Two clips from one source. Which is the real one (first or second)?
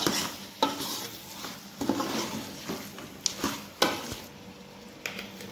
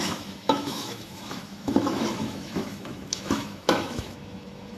first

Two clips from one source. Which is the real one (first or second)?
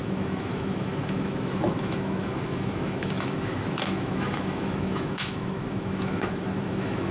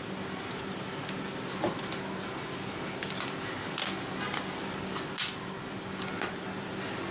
second